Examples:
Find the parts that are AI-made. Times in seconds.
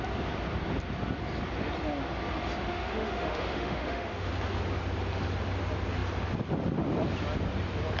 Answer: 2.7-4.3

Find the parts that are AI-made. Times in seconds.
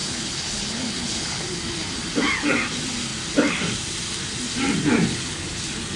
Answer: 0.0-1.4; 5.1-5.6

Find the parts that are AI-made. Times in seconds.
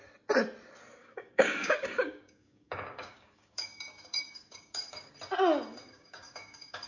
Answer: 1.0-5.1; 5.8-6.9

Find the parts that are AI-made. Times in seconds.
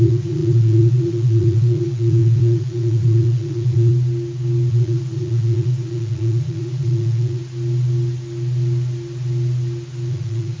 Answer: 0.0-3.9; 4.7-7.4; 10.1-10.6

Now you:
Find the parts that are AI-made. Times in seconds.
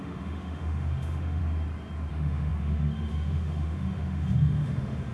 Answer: 0.0-1.4; 2.1-5.1